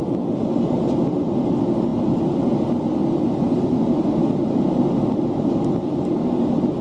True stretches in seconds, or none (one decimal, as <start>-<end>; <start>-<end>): 0.0-6.8

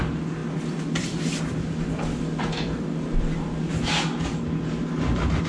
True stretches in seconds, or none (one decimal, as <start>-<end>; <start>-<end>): 0.0-5.5

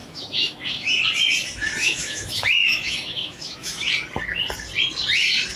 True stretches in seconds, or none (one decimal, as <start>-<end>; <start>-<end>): 1.0-1.8; 3.9-5.6

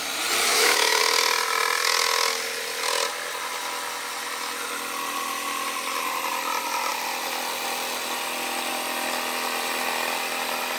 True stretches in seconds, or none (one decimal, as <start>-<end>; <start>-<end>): 0.0-0.5; 1.0-10.8